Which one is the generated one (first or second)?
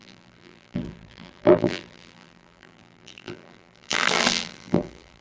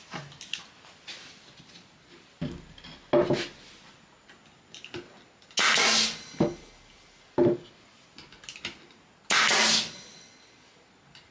first